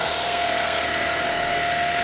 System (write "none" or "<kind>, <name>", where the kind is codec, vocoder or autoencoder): codec, SNAC